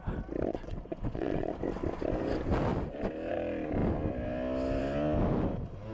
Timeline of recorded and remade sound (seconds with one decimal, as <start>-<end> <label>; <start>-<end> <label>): 0.0-0.5 recorded; 0.5-1.5 remade; 1.5-5.9 recorded